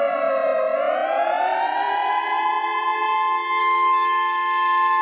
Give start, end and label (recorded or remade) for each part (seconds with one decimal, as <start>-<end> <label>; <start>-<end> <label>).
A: 0.0-3.6 recorded; 3.6-5.0 remade